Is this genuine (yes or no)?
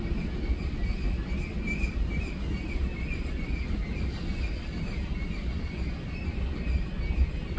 yes